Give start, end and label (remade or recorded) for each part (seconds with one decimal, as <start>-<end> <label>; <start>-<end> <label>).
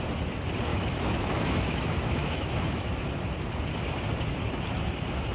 0.0-0.7 recorded; 0.7-2.9 remade; 2.9-5.3 recorded